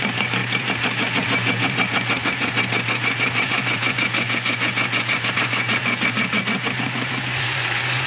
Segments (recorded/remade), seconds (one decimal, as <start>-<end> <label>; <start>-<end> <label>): 0.0-5.8 remade; 5.8-6.4 recorded; 6.4-8.1 remade

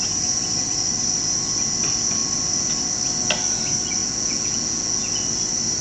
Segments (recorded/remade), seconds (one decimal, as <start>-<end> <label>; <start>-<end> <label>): 0.0-4.0 recorded; 4.0-5.1 remade; 5.1-5.8 recorded

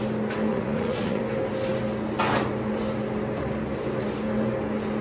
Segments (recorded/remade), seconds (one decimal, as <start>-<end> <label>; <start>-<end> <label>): 0.0-0.5 recorded; 0.5-1.2 remade; 1.2-5.0 recorded

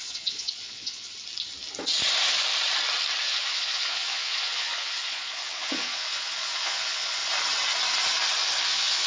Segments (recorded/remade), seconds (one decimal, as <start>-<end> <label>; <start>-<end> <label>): 0.0-1.1 remade; 1.1-3.2 recorded; 3.2-7.2 remade; 7.2-8.6 recorded; 8.6-9.1 remade

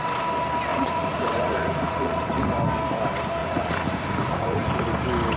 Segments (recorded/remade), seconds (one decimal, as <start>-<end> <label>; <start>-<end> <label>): 0.0-0.7 recorded; 0.7-2.4 remade; 2.4-3.4 recorded; 3.4-4.7 remade; 4.7-5.4 recorded